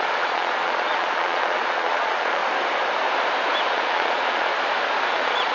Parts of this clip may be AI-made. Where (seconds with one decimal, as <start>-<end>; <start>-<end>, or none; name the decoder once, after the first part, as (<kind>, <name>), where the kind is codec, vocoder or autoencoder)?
0.0-2.4 (vocoder, Vocos); 3.7-4.5; 5.1-5.5